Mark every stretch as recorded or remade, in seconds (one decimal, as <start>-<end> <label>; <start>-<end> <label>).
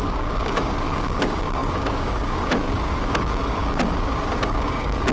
0.0-5.1 remade